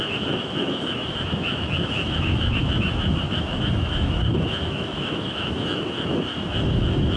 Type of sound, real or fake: fake